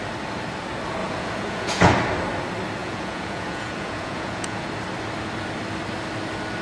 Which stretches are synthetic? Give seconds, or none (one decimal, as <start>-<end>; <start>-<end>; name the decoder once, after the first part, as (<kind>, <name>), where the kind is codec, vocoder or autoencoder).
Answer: 1.0-1.9 (vocoder, Vocos); 2.8-4.7